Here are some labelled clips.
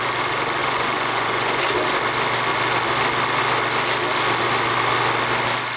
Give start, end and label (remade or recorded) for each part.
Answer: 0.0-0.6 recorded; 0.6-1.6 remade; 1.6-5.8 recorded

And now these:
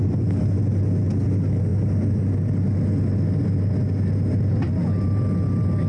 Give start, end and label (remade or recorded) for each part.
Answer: 0.0-5.9 recorded

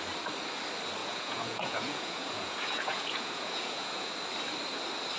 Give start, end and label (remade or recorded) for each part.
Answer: 0.0-1.0 recorded; 1.0-4.1 remade; 4.1-5.2 recorded

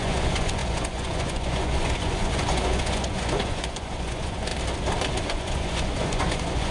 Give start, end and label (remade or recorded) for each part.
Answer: 0.0-4.5 remade; 4.5-5.1 recorded; 5.1-6.7 remade

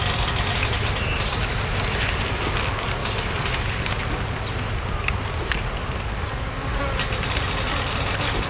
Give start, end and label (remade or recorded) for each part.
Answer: 0.0-8.5 recorded

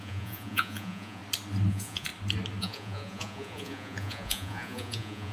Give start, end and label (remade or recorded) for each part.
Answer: 0.0-1.2 remade; 1.2-1.7 recorded; 1.7-2.1 remade; 2.1-2.6 recorded; 2.6-5.3 remade

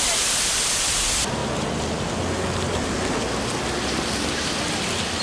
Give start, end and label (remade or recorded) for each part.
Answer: 0.0-5.2 recorded

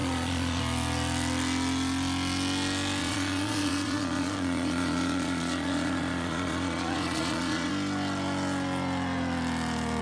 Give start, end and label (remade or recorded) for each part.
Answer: 0.0-0.6 remade; 0.6-3.0 recorded; 3.0-7.7 remade; 7.7-10.0 recorded